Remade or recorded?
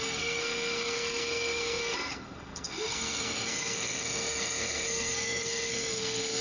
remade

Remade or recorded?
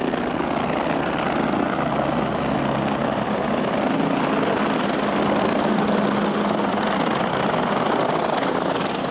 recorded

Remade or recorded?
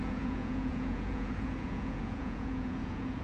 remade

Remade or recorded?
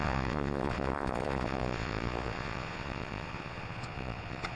remade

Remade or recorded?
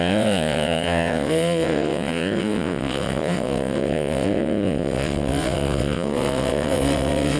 remade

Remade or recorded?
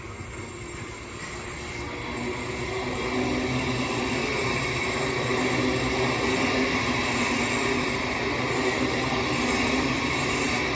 recorded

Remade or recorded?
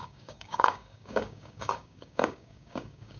remade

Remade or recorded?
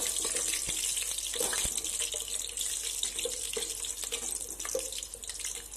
recorded